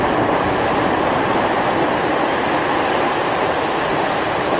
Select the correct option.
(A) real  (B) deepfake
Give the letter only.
B